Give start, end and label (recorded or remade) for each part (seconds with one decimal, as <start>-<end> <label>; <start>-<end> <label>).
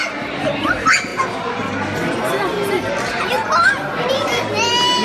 0.0-5.0 recorded